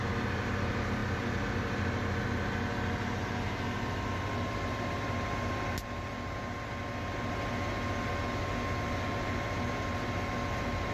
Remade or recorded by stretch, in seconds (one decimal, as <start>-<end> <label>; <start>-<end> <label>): 0.0-10.9 recorded